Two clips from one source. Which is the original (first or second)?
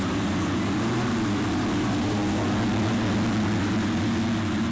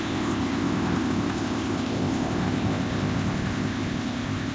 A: first